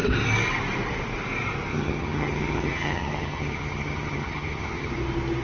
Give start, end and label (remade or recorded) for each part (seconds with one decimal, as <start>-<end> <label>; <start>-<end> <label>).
0.0-1.7 recorded; 1.7-4.9 remade; 4.9-5.4 recorded